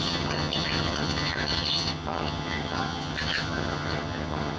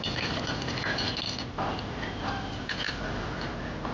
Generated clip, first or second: first